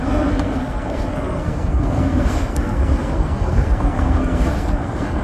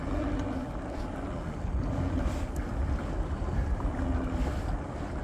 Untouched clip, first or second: second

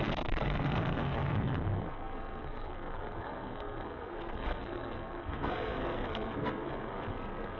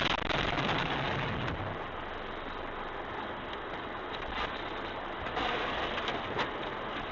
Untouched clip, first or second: second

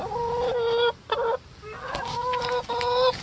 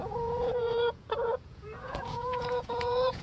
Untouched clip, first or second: first